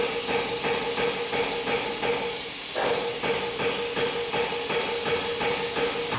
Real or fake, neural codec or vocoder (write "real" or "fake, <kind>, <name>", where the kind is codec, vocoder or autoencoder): real